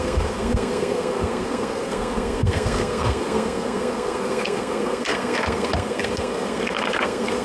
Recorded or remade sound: remade